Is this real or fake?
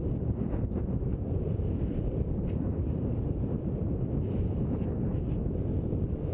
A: fake